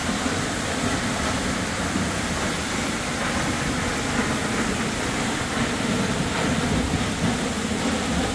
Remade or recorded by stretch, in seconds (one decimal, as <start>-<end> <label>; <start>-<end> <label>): 0.0-8.3 recorded